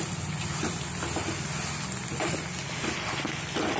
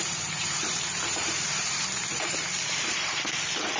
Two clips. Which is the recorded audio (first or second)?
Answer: first